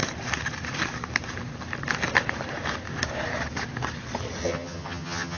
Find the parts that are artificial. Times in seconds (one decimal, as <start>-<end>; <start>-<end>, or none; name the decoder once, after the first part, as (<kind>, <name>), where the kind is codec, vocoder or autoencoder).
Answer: 4.4-5.4 (vocoder, HiFi-GAN)